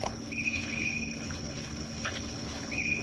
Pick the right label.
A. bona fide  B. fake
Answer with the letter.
B